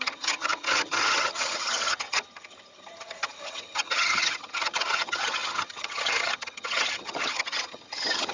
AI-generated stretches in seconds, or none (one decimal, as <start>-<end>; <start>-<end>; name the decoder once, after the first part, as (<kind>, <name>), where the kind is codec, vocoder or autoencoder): 0.0-8.3 (vocoder, HiFi-GAN)